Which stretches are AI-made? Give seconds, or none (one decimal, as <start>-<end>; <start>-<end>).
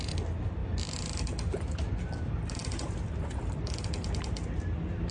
none